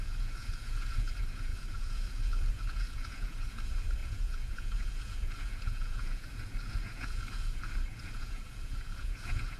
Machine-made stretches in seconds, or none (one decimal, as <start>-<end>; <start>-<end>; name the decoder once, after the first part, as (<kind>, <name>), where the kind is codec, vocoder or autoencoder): 0.0-9.6 (vocoder, Vocos)